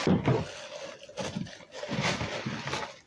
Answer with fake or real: real